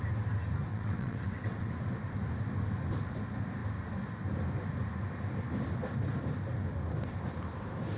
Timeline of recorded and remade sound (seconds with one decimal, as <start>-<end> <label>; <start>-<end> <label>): 0.0-0.7 recorded; 0.7-1.7 remade; 1.7-8.0 recorded